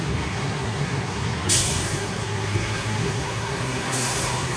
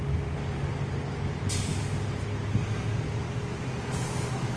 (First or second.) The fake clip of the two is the first